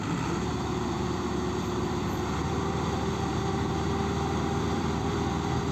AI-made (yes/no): yes